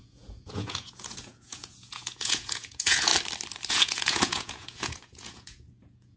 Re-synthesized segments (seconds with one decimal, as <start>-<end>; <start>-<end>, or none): 0.0-3.1; 3.7-6.2